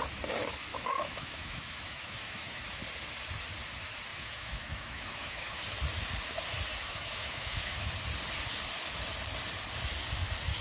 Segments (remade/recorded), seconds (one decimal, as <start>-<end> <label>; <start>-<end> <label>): 0.0-0.7 recorded; 0.7-2.8 remade; 2.8-4.1 recorded; 4.1-5.6 remade; 5.6-6.7 recorded; 6.7-7.9 remade; 7.9-10.6 recorded